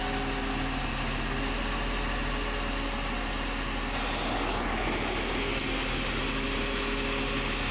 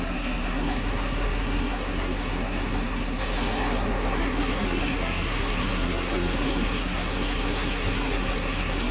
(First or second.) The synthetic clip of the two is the second